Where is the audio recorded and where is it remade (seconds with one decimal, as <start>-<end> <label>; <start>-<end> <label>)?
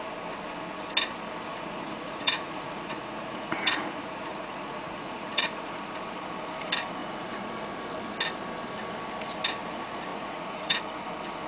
0.0-1.5 recorded; 1.5-5.8 remade; 5.8-7.0 recorded; 7.0-7.5 remade; 7.5-10.1 recorded; 10.1-10.8 remade; 10.8-11.5 recorded